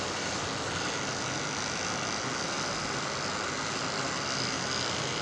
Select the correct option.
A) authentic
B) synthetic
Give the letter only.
A